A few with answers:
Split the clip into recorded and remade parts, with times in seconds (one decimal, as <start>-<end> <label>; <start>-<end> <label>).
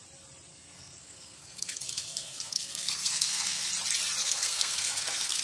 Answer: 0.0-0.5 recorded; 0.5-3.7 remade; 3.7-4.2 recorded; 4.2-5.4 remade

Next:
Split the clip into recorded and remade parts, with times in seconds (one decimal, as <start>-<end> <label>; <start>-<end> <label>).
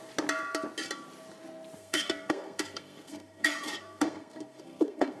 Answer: 0.0-1.8 recorded; 1.8-5.2 remade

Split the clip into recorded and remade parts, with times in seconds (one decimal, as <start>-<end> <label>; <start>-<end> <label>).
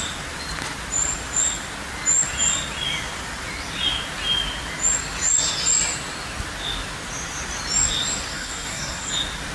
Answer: 0.0-8.3 recorded; 8.3-9.1 remade; 9.1-9.5 recorded